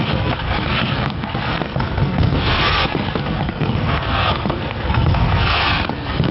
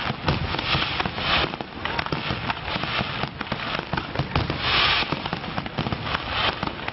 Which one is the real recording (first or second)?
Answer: second